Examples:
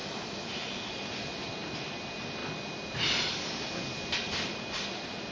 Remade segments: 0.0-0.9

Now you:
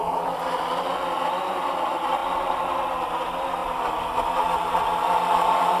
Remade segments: none